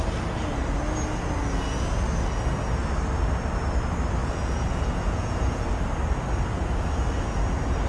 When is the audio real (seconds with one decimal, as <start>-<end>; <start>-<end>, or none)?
0.0-4.2; 5.8-7.9

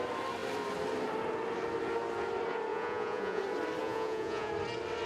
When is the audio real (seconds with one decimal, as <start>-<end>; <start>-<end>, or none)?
0.0-2.7; 3.4-3.8; 4.5-5.1

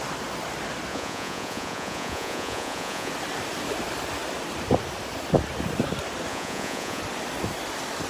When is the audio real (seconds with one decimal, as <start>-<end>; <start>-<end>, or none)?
0.0-0.9; 3.1-6.3; 7.0-8.1

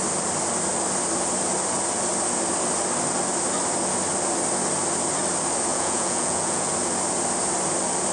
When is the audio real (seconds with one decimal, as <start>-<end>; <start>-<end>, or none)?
0.0-5.7; 6.7-8.1

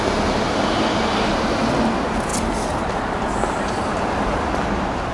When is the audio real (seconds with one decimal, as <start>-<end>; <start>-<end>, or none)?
0.0-5.1

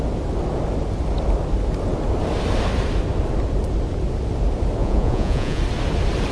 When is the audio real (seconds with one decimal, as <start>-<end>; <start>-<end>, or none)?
0.0-4.8; 5.6-6.3

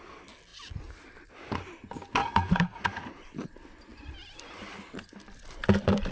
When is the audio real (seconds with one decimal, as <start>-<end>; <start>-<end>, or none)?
0.0-2.2; 3.1-6.1

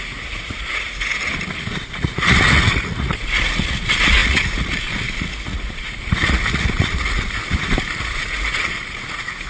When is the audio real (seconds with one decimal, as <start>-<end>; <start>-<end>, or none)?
1.2-1.8; 7.4-8.0